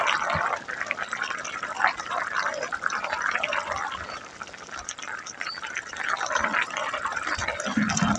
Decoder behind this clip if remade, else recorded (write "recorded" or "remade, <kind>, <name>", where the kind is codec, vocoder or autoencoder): remade, vocoder, BigVGAN v2